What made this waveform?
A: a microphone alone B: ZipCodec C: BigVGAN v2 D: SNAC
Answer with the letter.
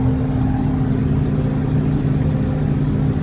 A